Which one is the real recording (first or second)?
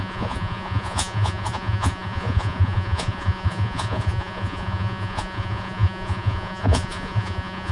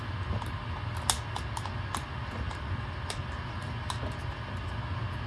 second